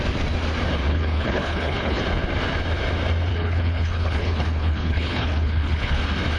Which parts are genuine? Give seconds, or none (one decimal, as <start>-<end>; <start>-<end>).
0.0-0.9; 2.0-3.3; 6.0-6.4